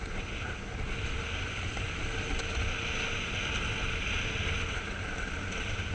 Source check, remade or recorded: recorded